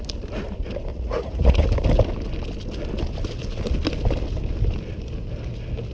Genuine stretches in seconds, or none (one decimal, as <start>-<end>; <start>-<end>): 0.0-0.9; 1.7-5.9